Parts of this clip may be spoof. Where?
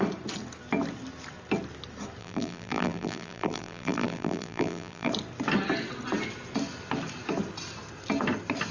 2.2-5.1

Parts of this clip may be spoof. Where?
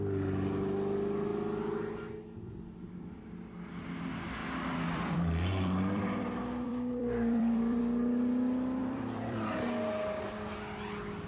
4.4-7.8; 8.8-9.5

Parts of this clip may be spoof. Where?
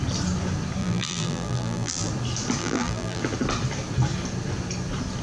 0.8-2.1; 2.6-3.2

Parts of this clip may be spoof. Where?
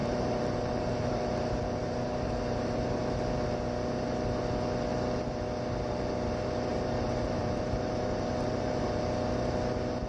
0.0-3.0; 6.7-9.0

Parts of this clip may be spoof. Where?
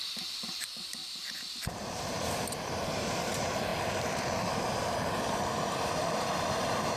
0.0-1.0; 1.6-3.7; 4.5-7.0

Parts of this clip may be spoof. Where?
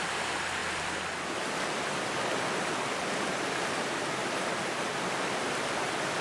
0.0-0.6; 3.6-4.2; 5.4-6.2